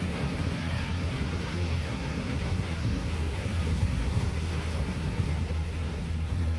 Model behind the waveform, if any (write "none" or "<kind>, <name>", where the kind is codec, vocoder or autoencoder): codec, SNAC